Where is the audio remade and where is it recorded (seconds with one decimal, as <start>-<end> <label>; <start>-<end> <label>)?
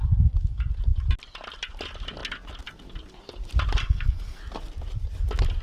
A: 0.0-3.8 recorded; 3.8-4.4 remade; 4.4-5.6 recorded